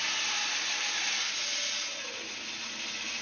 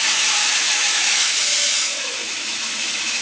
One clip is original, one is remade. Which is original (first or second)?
first